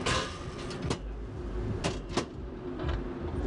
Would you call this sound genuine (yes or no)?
yes